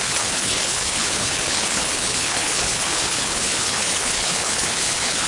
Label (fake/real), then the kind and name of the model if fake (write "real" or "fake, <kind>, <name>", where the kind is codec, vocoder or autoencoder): fake, codec, HILCodec